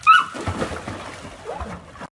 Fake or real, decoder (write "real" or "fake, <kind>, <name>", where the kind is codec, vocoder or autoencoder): real